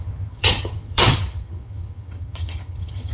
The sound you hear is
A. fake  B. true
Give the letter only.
A